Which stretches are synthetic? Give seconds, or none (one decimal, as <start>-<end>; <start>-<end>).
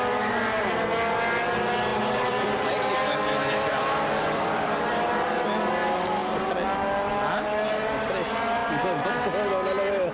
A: 1.9-5.7; 8.6-9.1